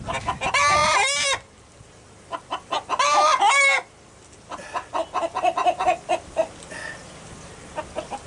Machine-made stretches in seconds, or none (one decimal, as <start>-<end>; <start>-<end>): none